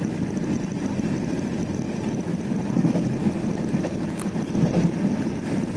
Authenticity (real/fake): real